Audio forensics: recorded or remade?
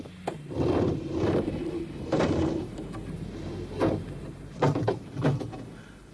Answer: recorded